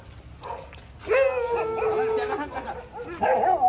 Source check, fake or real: real